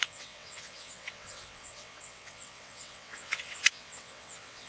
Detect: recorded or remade remade